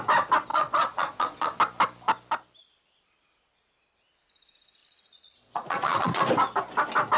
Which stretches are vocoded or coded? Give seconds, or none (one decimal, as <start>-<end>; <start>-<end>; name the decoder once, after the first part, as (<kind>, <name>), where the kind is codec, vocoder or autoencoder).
0.5-1.6 (vocoder, Vocos); 4.8-6.2